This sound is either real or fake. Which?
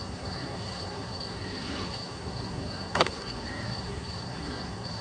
fake